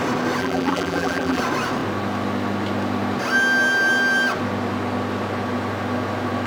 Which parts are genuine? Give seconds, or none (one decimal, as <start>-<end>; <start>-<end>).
0.0-0.4; 1.4-6.5